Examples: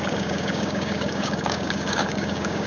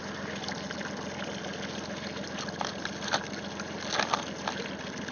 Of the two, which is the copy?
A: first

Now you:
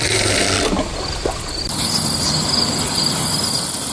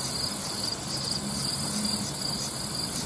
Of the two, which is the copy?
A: first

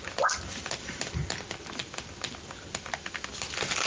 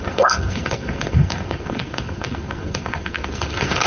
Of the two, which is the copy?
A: second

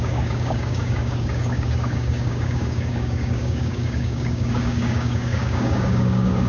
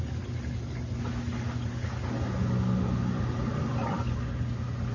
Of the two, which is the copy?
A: first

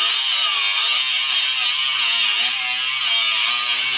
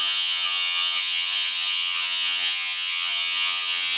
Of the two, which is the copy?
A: second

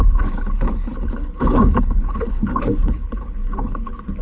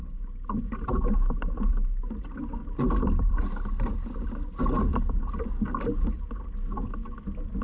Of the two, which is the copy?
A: first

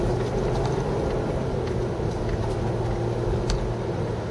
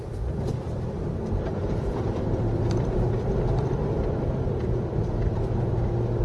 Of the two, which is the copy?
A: second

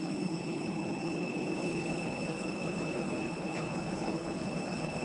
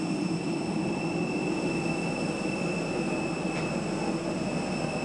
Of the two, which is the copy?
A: first